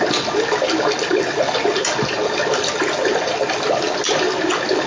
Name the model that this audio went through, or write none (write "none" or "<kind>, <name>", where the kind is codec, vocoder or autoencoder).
none